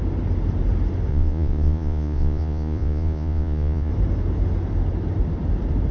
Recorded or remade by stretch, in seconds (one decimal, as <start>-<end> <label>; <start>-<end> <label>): 0.0-1.1 recorded; 1.1-3.9 remade; 3.9-5.9 recorded